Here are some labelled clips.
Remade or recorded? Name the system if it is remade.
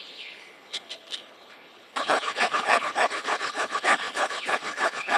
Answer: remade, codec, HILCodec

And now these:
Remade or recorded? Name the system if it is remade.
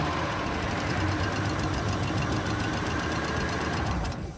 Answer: remade, vocoder, BigVGAN v2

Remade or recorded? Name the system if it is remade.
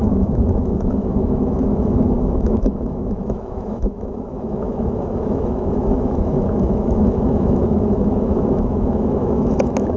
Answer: remade, autoencoder, DAC-VAE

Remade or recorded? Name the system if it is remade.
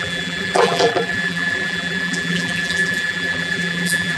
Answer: remade, vocoder, BigVGAN v2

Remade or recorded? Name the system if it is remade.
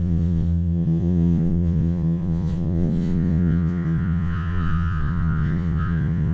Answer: remade, vocoder, Vocos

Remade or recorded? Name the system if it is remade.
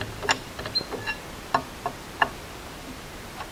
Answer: recorded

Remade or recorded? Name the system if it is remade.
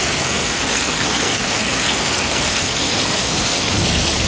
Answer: remade, codec, SNAC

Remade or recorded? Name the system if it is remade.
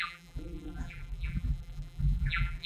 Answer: remade, vocoder, BigVGAN v2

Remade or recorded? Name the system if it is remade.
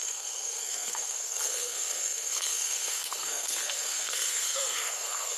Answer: remade, codec, SNAC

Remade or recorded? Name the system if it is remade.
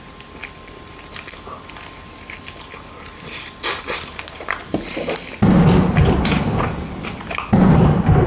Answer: recorded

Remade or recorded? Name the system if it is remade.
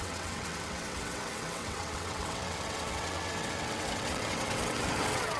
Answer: remade, vocoder, WaveNeXt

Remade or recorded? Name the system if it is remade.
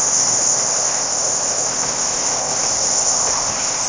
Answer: remade, codec, ZipCodec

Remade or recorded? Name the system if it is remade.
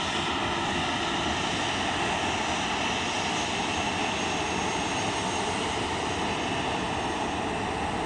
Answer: recorded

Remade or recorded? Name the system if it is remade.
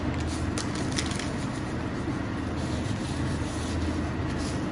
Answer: recorded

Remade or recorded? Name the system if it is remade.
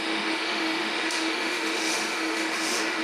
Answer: remade, autoencoder, DAC-VAE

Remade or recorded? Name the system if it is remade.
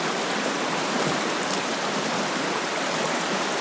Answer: remade, vocoder, BigVGAN v2